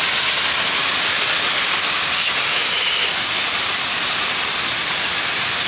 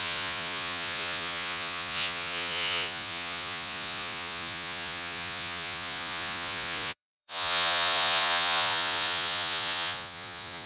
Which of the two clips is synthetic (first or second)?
second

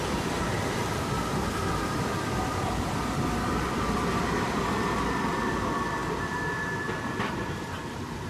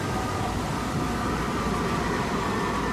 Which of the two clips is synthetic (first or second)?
first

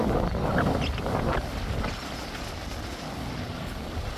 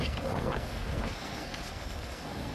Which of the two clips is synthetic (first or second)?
second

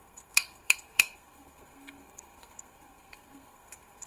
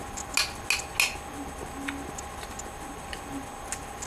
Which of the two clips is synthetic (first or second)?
first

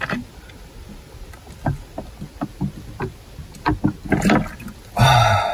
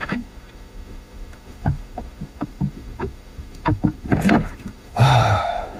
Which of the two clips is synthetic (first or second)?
second